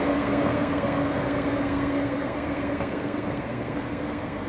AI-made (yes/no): yes